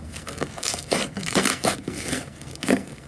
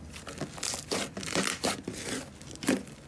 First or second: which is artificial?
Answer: first